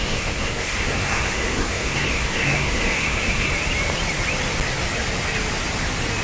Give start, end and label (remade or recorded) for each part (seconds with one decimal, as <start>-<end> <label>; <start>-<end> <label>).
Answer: 0.0-3.5 remade; 3.5-6.2 recorded